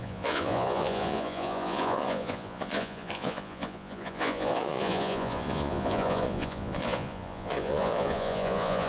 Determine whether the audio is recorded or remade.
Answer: remade